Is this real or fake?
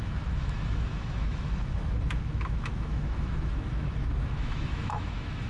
fake